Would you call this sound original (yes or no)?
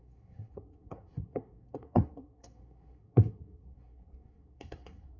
no